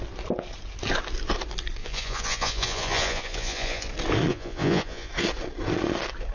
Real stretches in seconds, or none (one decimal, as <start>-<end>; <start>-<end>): 0.0-1.8; 3.9-4.3; 5.1-6.3

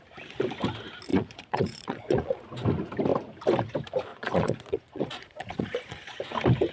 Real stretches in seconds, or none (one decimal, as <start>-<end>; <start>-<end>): 0.0-1.1; 2.4-4.1; 6.2-6.7

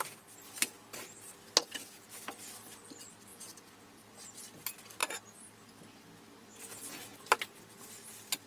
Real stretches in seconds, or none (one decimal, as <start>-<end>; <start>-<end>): 0.0-1.6; 2.1-3.3; 3.9-8.5

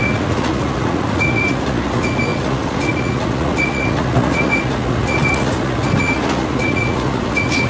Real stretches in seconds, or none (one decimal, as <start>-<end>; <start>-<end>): none

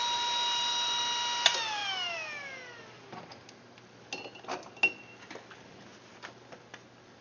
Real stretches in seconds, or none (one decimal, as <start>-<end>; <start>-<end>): 0.0-7.2

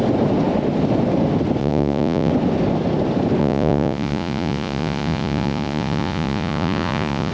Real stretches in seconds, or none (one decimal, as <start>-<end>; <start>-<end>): 0.0-1.6; 2.3-3.4

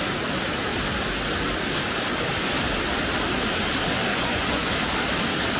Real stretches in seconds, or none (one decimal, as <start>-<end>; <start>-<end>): 0.0-4.1; 4.7-5.6

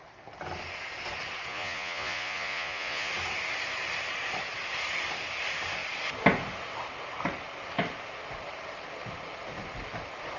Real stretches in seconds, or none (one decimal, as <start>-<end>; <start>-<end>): 0.0-1.5; 3.1-10.4